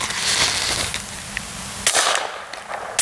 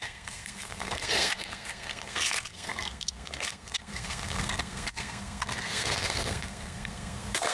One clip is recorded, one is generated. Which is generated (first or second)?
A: second